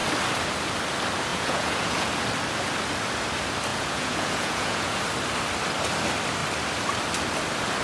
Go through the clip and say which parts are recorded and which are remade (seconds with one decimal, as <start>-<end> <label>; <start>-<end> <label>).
0.0-1.3 recorded; 1.3-2.1 remade; 2.1-3.7 recorded; 3.7-5.0 remade; 5.0-7.8 recorded